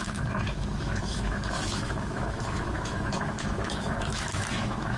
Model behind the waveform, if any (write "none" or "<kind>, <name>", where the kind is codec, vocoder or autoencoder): autoencoder, DAC-VAE